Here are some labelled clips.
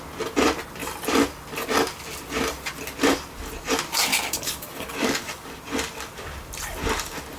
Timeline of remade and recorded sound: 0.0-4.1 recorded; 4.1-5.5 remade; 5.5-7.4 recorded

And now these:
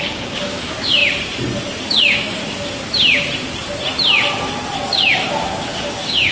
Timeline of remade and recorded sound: 0.0-1.0 remade; 1.0-1.9 recorded; 1.9-2.4 remade; 2.4-4.9 recorded; 4.9-6.3 remade

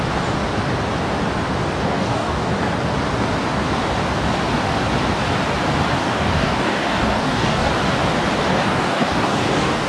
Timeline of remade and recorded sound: 0.0-1.8 recorded; 1.8-2.5 remade; 2.5-6.0 recorded; 6.0-7.7 remade; 7.7-8.5 recorded; 8.5-9.9 remade

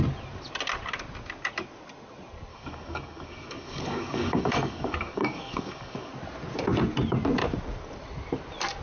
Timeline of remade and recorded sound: 0.0-2.5 recorded; 2.5-6.1 remade; 6.1-8.8 recorded

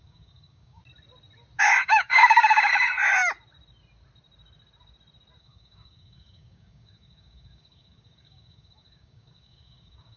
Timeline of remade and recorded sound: 0.0-0.8 remade; 0.8-1.6 recorded; 1.6-2.7 remade; 2.7-5.4 recorded; 5.4-10.2 remade

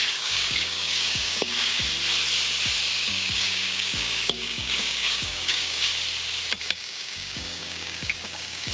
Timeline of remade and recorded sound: 0.0-1.8 remade; 1.8-3.0 recorded; 3.0-5.9 remade; 5.9-6.6 recorded; 6.6-8.7 remade

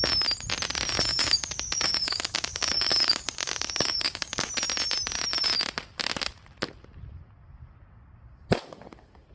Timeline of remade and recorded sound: 0.0-1.1 recorded; 1.1-4.5 remade; 4.5-9.3 recorded

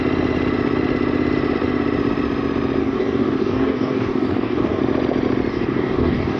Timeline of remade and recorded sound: 0.0-2.8 recorded; 2.8-4.8 remade; 4.8-5.5 recorded; 5.5-6.4 remade